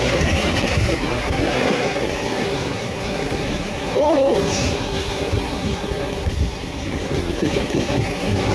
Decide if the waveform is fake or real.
fake